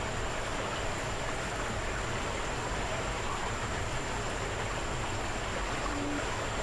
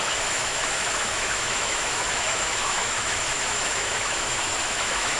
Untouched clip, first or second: first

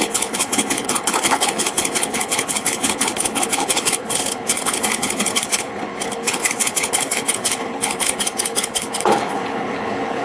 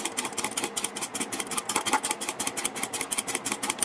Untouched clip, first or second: second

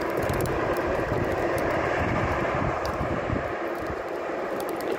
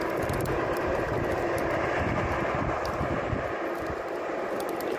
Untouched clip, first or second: second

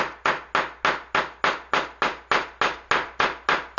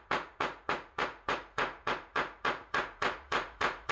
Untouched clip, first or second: first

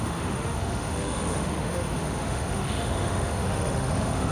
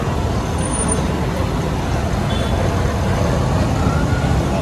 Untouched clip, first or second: second